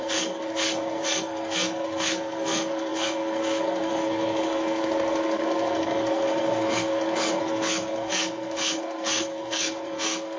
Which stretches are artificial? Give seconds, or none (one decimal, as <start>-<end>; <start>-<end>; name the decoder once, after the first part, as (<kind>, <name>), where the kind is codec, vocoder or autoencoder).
0.0-10.4 (codec, SNAC)